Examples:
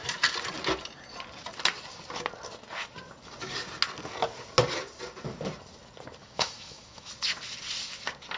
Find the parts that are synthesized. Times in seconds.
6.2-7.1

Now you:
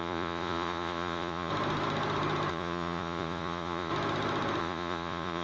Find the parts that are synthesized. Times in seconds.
0.0-1.5; 2.5-3.9; 4.6-5.4

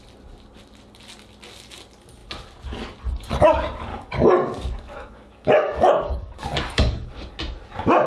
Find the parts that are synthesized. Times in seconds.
3.9-7.4

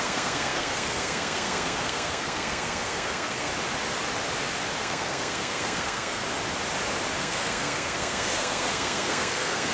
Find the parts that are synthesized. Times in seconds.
0.0-3.5; 4.8-6.2; 7.2-9.7